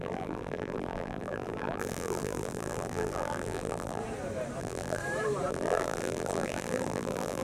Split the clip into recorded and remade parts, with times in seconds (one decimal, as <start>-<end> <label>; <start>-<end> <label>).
0.0-4.0 remade; 4.0-4.6 recorded; 4.6-5.0 remade; 5.0-5.5 recorded; 5.5-7.4 remade